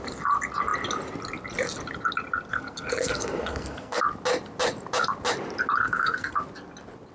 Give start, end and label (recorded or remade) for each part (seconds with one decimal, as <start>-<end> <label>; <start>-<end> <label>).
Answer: 0.0-2.5 recorded; 2.5-4.0 remade; 4.0-5.8 recorded; 5.8-6.4 remade; 6.4-7.1 recorded